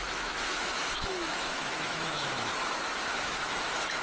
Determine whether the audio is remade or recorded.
remade